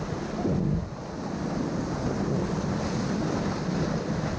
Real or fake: real